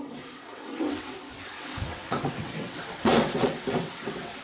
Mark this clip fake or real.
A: fake